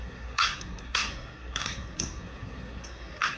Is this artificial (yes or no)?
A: yes